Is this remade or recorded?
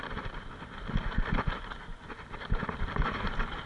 recorded